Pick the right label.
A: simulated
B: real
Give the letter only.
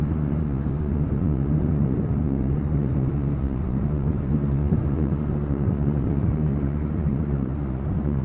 A